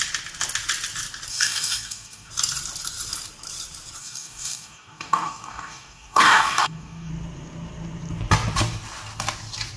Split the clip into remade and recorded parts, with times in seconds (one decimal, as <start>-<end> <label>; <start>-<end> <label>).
0.0-1.3 recorded; 1.3-2.3 remade; 2.3-4.0 recorded; 4.0-7.1 remade; 7.1-9.8 recorded